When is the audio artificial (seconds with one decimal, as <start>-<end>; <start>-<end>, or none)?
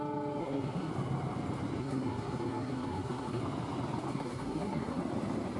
0.4-0.9; 1.8-3.4; 4.1-5.0